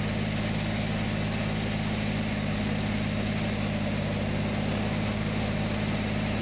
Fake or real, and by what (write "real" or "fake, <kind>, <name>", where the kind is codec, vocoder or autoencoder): real